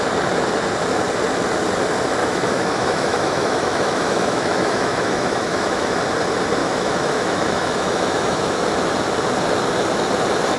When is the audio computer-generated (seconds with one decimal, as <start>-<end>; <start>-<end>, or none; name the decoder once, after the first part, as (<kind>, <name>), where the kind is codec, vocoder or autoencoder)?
2.2-6.0 (autoencoder, DAC-VAE); 6.6-8.6